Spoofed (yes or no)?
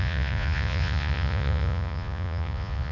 yes